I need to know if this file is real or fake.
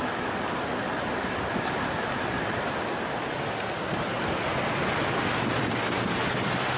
real